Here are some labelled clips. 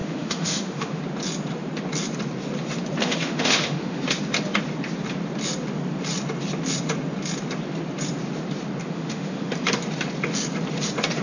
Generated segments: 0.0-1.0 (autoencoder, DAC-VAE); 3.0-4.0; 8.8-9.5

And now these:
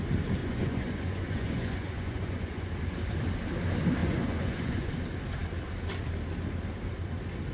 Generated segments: 0.4-2.7 (vocoder, Vocos); 4.0-4.9

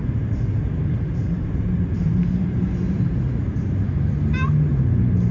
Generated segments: 0.0-2.6 (vocoder, BigVGAN v2)

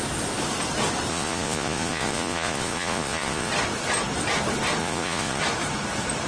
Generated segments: 1.1-3.5 (vocoder, Vocos); 4.8-5.4

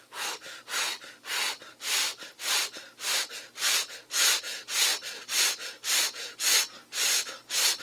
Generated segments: none

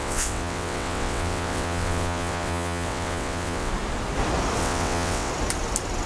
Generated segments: 0.0-3.7 (vocoder, WaveNeXt); 4.6-5.3